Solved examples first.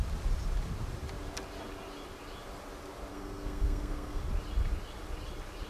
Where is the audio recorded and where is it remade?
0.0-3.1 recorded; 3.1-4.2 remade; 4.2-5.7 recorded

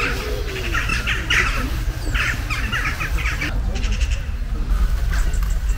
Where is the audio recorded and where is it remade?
0.0-5.8 recorded

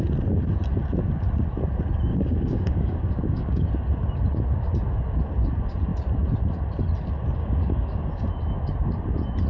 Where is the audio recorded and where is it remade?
0.0-2.1 recorded; 2.1-3.7 remade; 3.7-7.4 recorded; 7.4-8.3 remade; 8.3-9.5 recorded

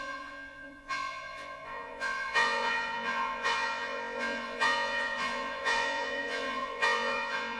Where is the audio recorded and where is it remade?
0.0-7.6 remade

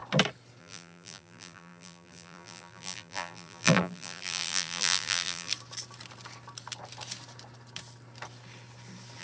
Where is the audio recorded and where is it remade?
0.0-0.6 recorded; 0.6-5.5 remade; 5.5-9.2 recorded

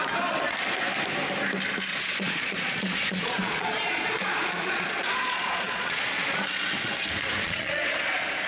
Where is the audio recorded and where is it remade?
0.0-1.9 recorded; 1.9-6.9 remade; 6.9-7.4 recorded; 7.4-8.5 remade

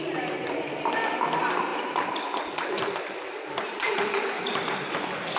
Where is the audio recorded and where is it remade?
0.0-1.7 recorded; 1.7-4.9 remade; 4.9-5.4 recorded